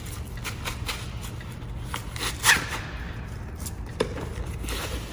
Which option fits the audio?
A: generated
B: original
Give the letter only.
B